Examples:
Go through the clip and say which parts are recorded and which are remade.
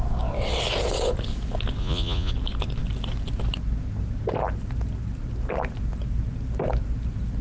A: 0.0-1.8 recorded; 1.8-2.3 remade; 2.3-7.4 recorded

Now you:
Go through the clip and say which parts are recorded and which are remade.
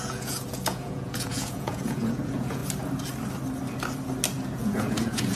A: 0.0-2.6 remade; 2.6-4.6 recorded; 4.6-5.4 remade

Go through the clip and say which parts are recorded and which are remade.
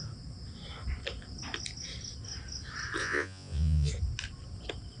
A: 0.0-3.0 recorded; 3.0-3.9 remade; 3.9-5.0 recorded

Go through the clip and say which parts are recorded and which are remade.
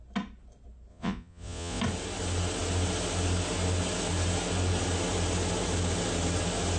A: 0.0-0.9 recorded; 0.9-1.8 remade; 1.8-6.8 recorded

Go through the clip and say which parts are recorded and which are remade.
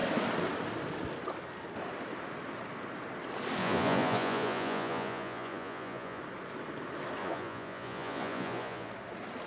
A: 0.0-3.6 recorded; 3.6-6.2 remade; 6.2-7.2 recorded; 7.2-8.9 remade; 8.9-9.5 recorded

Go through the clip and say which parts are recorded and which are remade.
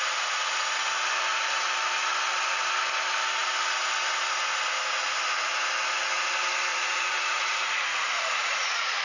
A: 0.0-6.7 recorded; 6.7-9.0 remade